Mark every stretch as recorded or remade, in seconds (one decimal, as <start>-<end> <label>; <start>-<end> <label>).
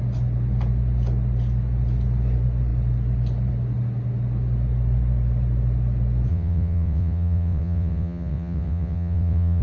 0.0-6.3 recorded; 6.3-9.6 remade